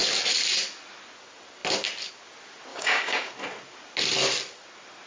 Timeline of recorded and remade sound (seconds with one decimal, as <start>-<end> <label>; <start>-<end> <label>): 0.0-2.7 recorded; 2.7-3.3 remade; 3.3-5.1 recorded